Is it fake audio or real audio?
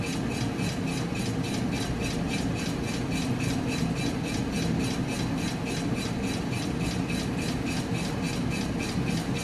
real